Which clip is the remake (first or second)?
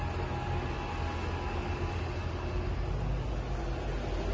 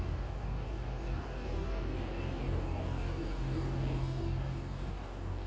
second